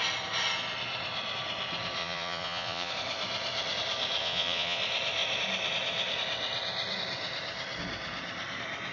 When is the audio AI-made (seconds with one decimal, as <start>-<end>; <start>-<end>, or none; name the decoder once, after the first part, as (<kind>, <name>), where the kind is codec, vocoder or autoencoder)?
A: 2.0-2.9 (vocoder, Vocos); 4.2-4.8